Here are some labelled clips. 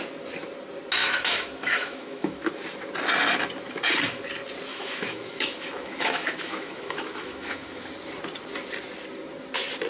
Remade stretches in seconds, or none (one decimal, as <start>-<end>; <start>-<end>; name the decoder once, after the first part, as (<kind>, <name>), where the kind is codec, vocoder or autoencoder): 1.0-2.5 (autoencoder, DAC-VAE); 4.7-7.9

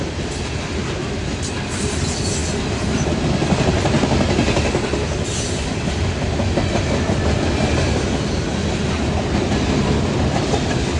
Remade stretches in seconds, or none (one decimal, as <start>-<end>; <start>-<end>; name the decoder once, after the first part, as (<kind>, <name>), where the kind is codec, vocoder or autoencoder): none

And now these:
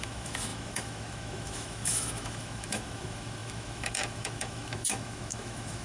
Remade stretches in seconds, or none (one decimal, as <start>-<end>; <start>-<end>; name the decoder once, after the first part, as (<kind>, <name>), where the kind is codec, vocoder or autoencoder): 0.0-5.8 (autoencoder, DAC-VAE)

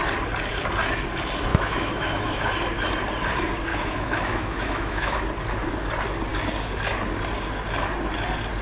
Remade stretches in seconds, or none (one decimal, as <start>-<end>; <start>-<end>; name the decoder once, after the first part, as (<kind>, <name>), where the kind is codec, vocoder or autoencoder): 1.5-2.5 (autoencoder, DAC-VAE); 3.7-5.2

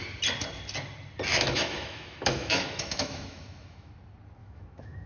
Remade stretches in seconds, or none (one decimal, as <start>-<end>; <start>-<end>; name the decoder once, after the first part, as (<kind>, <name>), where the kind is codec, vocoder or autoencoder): 1.3-3.9 (autoencoder, DAC-VAE); 4.4-5.1

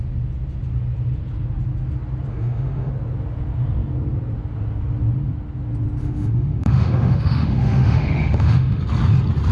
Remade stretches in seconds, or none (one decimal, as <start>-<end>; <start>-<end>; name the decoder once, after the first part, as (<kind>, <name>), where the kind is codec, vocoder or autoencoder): 2.3-2.9 (autoencoder, DAC-VAE); 6.0-8.8